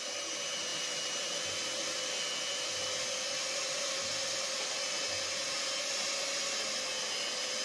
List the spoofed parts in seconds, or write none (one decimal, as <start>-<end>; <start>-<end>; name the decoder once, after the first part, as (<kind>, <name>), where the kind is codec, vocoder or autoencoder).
none